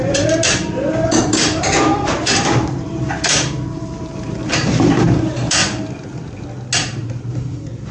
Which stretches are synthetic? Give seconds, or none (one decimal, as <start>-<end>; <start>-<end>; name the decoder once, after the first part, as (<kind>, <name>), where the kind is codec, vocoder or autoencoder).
0.0-5.6 (vocoder, BigVGAN v2)